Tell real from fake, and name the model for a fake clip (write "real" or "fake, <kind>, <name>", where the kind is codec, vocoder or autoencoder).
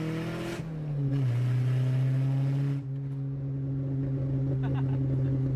real